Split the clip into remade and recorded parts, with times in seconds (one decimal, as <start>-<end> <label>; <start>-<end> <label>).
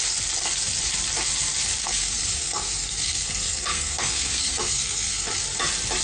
0.0-1.8 recorded; 1.8-5.4 remade; 5.4-6.0 recorded